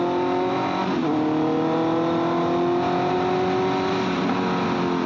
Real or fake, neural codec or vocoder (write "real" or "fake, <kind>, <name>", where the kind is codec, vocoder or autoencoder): real